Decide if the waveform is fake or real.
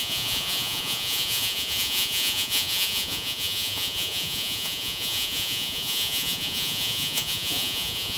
fake